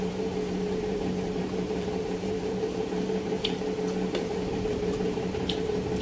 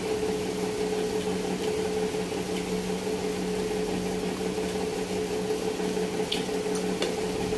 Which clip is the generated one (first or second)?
first